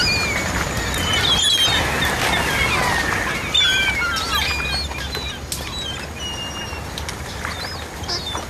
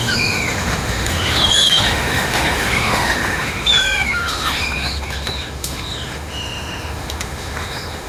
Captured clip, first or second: first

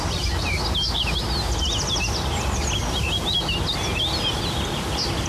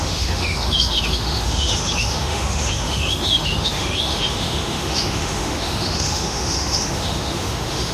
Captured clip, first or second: first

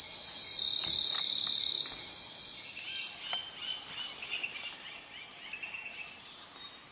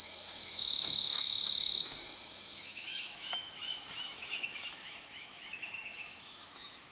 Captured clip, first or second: first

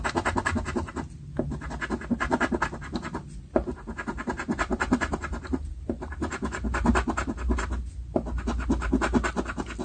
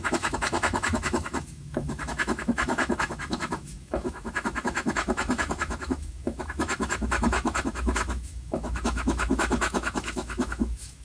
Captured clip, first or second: first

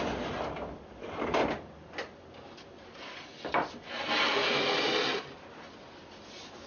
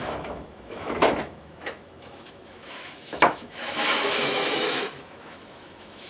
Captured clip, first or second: first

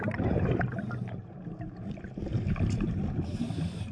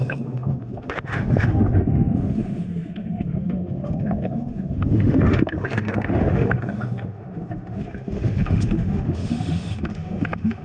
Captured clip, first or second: first